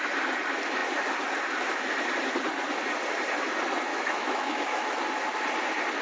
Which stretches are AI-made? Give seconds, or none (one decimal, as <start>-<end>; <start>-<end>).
3.9-5.0